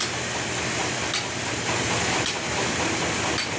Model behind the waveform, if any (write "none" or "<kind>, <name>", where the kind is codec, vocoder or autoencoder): none